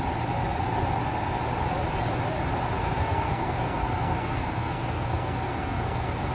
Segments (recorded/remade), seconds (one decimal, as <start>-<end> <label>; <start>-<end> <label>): 0.0-2.8 recorded; 2.8-6.3 remade